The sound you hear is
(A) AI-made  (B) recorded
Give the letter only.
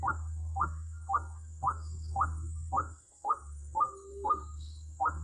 A